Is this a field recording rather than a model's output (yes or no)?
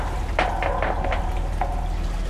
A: yes